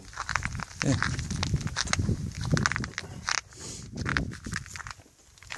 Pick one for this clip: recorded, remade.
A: recorded